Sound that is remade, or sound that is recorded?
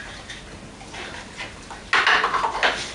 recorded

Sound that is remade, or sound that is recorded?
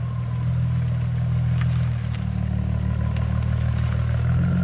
recorded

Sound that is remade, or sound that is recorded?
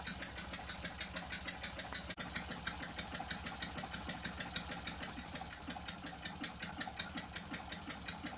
recorded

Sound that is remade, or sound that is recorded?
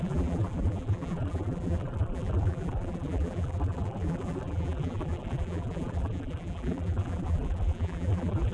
remade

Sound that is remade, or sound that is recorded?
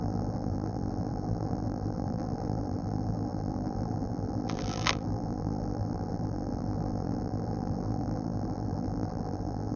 remade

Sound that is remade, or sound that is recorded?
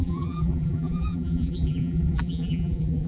remade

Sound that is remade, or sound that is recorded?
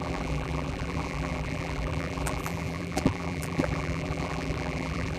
remade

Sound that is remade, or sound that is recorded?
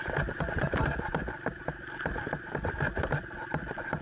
recorded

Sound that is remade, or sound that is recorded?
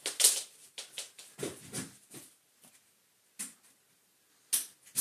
recorded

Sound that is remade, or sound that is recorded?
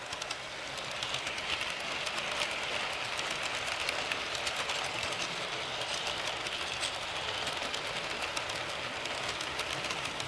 recorded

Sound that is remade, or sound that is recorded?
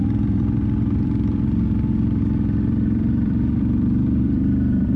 remade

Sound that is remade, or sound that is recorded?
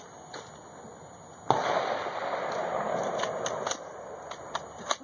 recorded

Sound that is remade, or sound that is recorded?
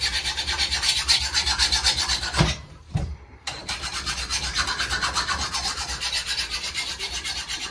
remade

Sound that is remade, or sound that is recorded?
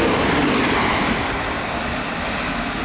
recorded